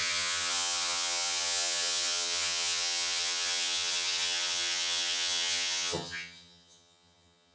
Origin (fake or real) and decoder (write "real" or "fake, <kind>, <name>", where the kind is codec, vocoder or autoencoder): fake, vocoder, HiFi-GAN